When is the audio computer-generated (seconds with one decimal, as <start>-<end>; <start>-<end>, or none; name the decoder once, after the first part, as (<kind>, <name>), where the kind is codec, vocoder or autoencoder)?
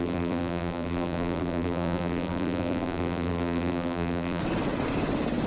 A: 0.0-4.4 (vocoder, BigVGAN v2)